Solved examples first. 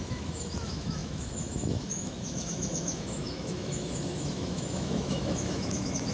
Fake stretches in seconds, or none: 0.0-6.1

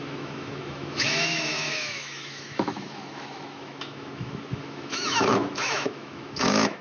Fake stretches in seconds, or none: 0.0-6.8

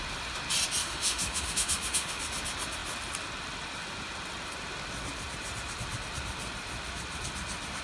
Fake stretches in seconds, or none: 0.8-2.2

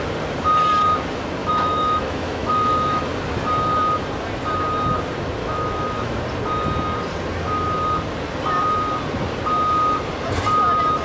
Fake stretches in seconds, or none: 1.4-3.0; 5.4-6.2

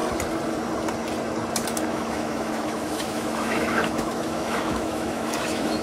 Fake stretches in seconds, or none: 1.9-5.8

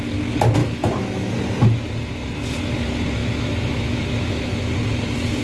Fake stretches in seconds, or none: 0.6-1.3; 3.2-4.7